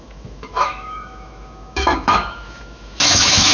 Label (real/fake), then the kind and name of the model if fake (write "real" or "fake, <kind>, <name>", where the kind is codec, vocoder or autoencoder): fake, autoencoder, DAC-VAE